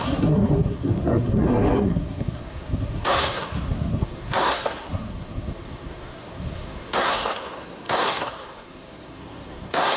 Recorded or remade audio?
remade